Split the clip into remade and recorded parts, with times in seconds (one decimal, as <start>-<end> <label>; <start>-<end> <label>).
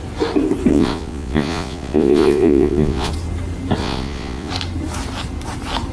0.0-0.7 recorded; 0.7-3.1 remade; 3.1-3.8 recorded; 3.8-4.5 remade; 4.5-5.9 recorded